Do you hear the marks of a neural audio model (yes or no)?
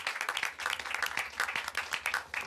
yes